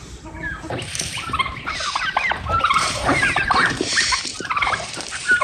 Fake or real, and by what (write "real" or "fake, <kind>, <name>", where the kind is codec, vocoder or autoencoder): fake, vocoder, BigVGAN v2